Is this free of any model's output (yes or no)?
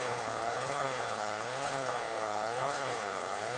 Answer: no